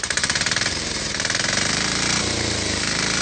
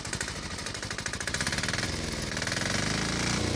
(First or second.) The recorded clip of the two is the second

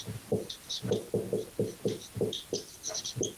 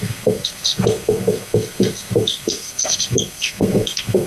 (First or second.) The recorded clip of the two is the first